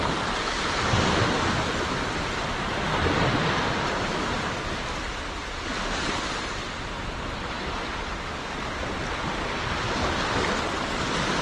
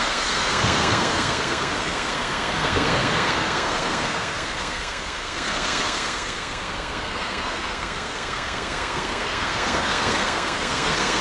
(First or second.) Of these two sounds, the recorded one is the first